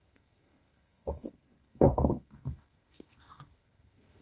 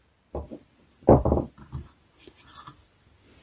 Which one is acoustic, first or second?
second